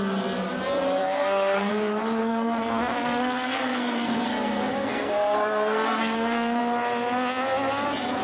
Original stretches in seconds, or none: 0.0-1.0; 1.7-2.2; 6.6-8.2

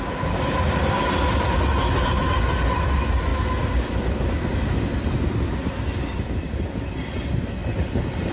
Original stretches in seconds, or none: 0.0-8.3

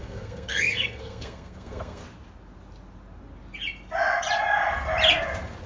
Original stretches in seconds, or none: 2.0-5.7

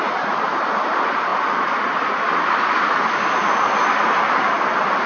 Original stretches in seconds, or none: 0.0-5.1

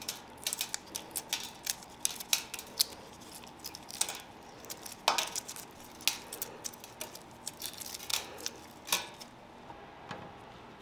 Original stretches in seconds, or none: 0.0-10.8

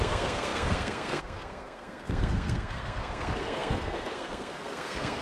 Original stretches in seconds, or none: none

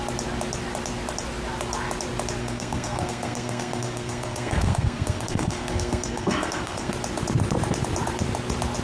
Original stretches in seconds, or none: 0.0-2.4; 6.9-8.8